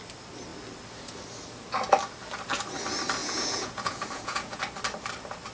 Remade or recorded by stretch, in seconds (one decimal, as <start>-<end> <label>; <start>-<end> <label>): 0.0-3.2 recorded; 3.2-4.6 remade; 4.6-5.5 recorded